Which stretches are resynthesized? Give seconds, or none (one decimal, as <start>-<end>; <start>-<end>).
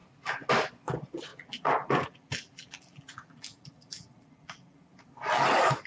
1.3-4.8